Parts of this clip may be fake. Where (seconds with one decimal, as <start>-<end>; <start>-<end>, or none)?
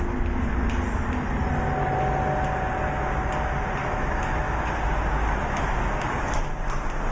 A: 3.8-6.4